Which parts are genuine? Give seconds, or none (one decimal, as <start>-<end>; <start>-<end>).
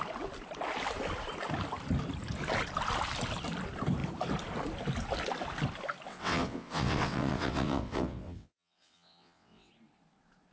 0.0-6.1; 9.7-10.5